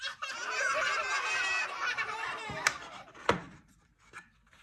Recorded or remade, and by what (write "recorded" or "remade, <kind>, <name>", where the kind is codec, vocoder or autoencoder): recorded